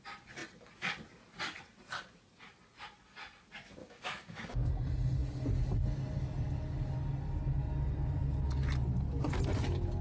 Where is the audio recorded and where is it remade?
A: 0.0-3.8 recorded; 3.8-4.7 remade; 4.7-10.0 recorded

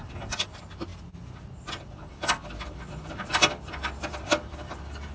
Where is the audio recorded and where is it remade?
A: 0.0-5.1 recorded

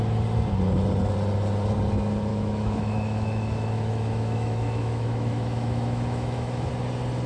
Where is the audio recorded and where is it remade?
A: 0.0-2.3 recorded; 2.3-6.7 remade; 6.7-7.3 recorded